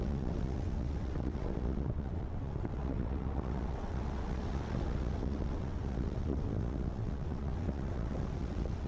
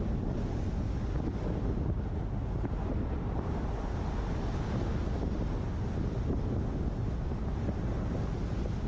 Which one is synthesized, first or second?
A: first